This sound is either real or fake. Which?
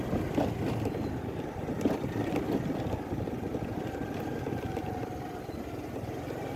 real